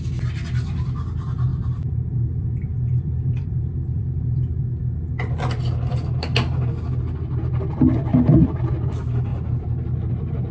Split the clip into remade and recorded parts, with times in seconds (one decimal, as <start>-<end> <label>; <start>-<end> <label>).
0.0-1.5 recorded; 1.5-4.6 remade; 4.6-8.1 recorded; 8.1-8.7 remade; 8.7-10.5 recorded